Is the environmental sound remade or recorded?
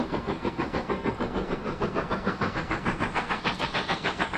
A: remade